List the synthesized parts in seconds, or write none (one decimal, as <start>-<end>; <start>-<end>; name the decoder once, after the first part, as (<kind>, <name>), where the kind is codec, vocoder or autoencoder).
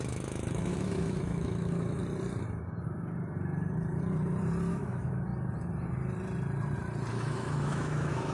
0.0-2.0 (autoencoder, DAC-VAE); 4.7-5.3; 7.1-8.3